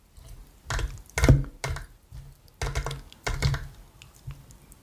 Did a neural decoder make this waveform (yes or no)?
no